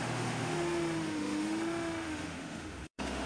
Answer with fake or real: fake